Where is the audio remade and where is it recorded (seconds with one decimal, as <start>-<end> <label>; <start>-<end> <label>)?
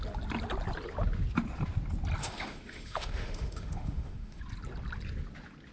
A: 0.0-2.2 recorded; 2.2-4.4 remade; 4.4-5.7 recorded